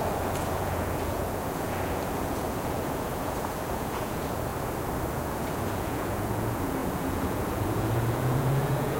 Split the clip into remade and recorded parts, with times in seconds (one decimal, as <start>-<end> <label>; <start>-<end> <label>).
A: 0.0-4.5 remade; 4.5-5.1 recorded; 5.1-9.0 remade

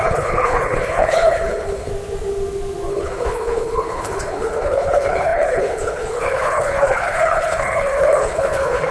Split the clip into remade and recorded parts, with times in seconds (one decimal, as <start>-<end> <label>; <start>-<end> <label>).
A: 0.0-1.9 remade; 1.9-2.9 recorded; 2.9-8.9 remade